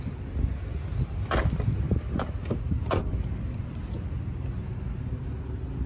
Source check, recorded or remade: recorded